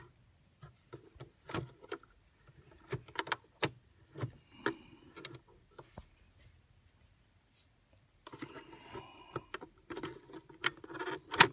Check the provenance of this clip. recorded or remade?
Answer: recorded